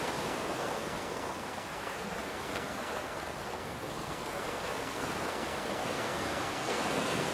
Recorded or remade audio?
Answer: remade